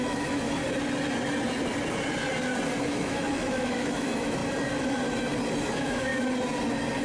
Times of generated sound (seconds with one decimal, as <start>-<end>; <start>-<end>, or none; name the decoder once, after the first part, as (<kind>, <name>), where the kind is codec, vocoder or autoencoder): 0.0-0.6 (autoencoder, DAC-VAE); 2.8-4.4; 5.6-6.1